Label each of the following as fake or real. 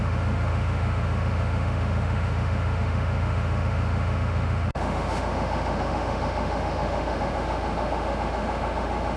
fake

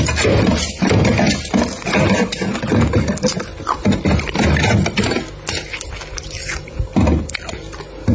real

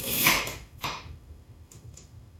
fake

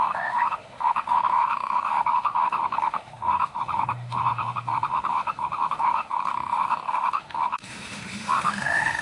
fake